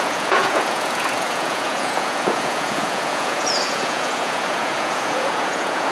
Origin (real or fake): fake